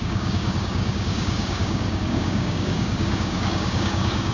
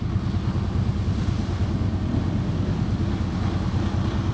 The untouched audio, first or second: second